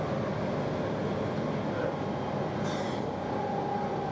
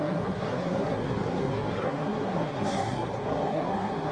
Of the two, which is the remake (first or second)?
second